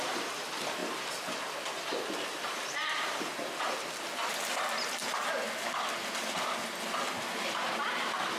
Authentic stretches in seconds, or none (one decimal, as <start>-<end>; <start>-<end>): 0.0-8.4